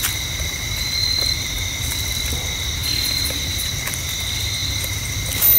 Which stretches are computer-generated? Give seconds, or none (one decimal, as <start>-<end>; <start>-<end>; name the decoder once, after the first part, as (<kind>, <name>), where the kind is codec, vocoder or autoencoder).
none